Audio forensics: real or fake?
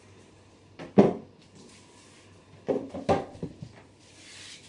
real